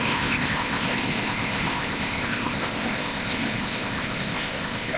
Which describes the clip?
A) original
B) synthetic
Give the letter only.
B